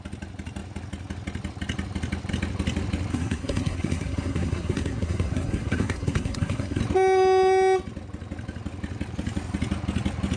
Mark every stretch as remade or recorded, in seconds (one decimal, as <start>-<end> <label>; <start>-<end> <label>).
0.0-3.1 recorded; 3.1-6.8 remade; 6.8-10.4 recorded